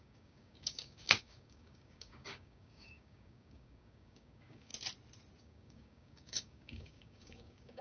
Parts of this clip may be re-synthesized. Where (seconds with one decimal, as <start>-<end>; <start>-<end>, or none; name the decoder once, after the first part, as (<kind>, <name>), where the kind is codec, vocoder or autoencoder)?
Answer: 0.0-4.7 (codec, DAC); 5.4-7.8